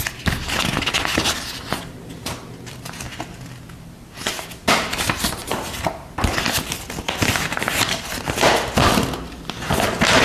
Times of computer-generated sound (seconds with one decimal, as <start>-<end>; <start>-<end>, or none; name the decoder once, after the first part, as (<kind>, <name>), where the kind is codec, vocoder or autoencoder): 5.4-8.8 (vocoder, BigVGAN v2)